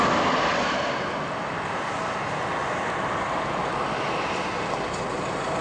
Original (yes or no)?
yes